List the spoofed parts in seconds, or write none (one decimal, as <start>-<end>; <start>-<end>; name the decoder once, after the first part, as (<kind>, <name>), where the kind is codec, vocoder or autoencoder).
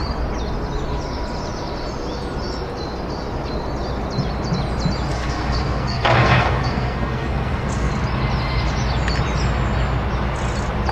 5.1-7.9 (codec, SNAC)